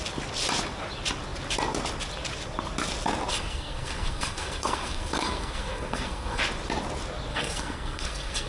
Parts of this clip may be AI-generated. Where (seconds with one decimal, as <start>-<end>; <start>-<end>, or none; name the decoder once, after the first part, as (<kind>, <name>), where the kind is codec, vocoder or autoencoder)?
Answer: 3.3-6.4 (codec, SNAC); 7.3-8.5